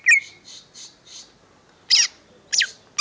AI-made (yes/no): no